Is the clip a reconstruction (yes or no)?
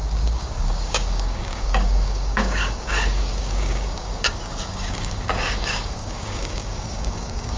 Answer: yes